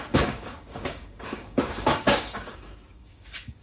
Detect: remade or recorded remade